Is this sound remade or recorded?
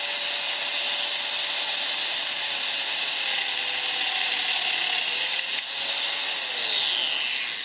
recorded